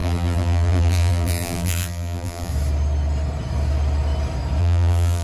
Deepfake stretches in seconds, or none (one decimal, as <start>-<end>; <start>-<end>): 0.0-2.5; 4.6-5.2